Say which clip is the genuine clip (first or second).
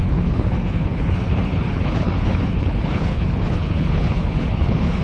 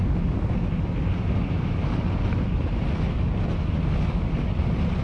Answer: second